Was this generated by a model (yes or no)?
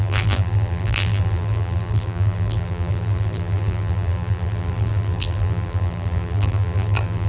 yes